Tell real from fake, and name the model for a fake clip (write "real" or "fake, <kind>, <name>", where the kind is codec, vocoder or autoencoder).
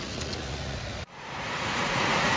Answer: fake, vocoder, Vocos